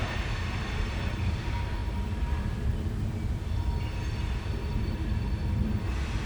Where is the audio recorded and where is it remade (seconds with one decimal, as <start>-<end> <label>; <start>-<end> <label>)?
0.0-6.3 recorded